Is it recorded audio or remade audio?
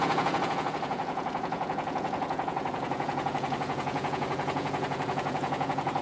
remade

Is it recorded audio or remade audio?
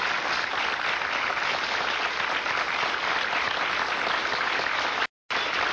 recorded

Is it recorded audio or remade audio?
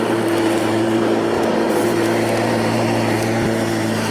remade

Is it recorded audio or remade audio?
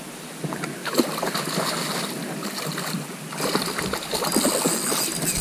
recorded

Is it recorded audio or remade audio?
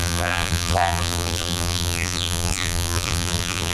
remade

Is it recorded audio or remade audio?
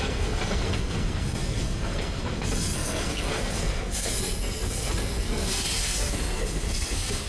remade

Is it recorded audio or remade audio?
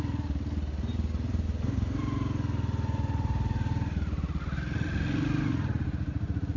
recorded